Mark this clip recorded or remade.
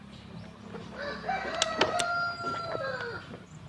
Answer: recorded